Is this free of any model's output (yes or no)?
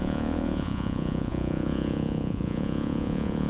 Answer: no